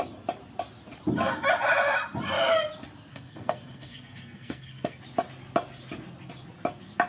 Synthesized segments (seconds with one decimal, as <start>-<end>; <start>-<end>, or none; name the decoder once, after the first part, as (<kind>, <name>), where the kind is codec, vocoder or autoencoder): 3.1-5.0 (codec, SNAC)